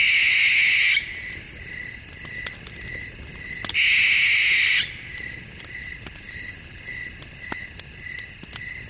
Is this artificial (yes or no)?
no